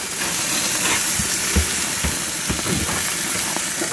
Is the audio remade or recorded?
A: recorded